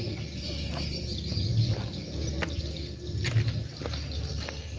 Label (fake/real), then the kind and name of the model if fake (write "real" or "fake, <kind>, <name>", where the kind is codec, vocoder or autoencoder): real